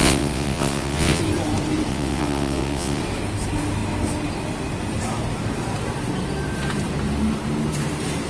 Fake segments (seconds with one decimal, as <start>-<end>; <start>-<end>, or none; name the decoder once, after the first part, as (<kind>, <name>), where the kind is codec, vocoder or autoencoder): 0.0-1.2 (vocoder, WaveNeXt); 1.9-3.0